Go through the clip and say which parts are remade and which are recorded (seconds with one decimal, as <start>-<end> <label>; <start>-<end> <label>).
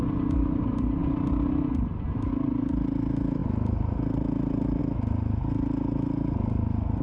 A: 0.0-7.0 recorded